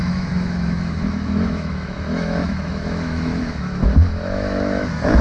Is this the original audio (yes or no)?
no